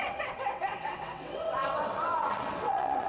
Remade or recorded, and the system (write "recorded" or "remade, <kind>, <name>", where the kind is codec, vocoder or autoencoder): remade, vocoder, WaveNeXt